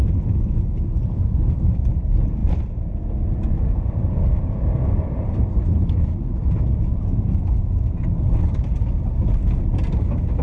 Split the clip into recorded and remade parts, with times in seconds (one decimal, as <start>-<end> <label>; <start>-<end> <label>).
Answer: 0.0-10.4 recorded